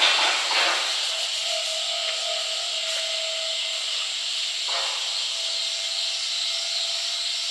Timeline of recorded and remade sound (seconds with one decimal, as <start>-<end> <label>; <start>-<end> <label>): 0.0-7.5 recorded